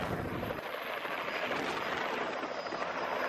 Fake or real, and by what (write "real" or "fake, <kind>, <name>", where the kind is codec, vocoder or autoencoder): real